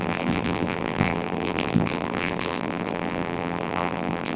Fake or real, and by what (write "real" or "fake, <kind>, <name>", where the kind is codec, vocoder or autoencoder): fake, vocoder, BigVGAN v2